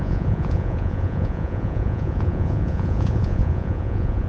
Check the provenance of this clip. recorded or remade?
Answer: remade